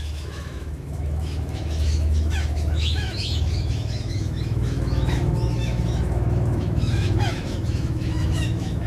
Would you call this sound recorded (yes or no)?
no